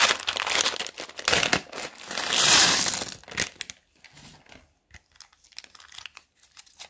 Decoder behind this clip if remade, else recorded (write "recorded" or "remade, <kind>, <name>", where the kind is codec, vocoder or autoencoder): recorded